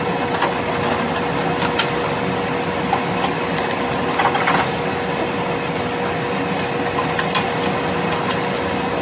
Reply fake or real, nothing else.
real